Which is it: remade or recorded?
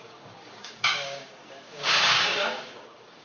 remade